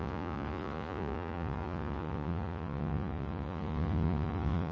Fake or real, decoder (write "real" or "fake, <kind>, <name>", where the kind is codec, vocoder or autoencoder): fake, vocoder, Vocos